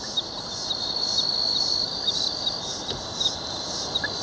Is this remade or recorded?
recorded